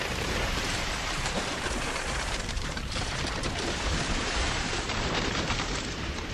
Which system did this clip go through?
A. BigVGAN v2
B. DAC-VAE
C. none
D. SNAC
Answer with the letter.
A